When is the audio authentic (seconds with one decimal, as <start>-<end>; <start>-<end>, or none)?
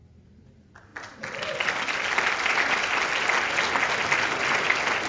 0.0-5.1